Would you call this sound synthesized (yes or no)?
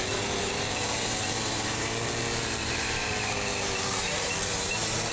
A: yes